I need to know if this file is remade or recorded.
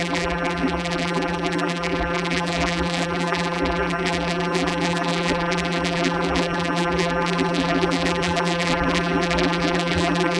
remade